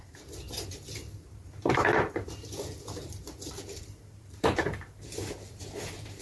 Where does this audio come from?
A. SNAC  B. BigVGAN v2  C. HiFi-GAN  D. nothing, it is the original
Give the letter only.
B